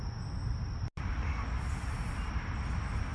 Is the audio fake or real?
real